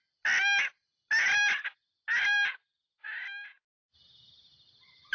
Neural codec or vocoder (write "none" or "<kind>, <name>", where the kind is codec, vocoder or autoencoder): none